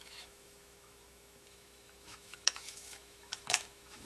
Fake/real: fake